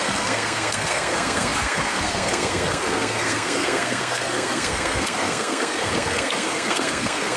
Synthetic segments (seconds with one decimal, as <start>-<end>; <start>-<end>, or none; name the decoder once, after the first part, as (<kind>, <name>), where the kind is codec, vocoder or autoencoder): 0.0-7.4 (codec, SNAC)